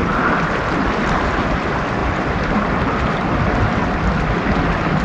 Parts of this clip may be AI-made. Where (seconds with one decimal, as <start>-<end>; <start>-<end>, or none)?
2.0-2.6